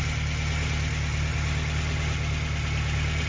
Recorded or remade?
recorded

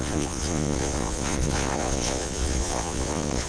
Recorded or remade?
remade